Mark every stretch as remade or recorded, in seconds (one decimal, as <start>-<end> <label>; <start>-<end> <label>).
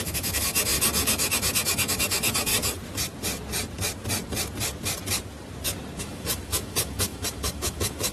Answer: 0.0-2.5 remade; 2.5-6.0 recorded; 6.0-8.1 remade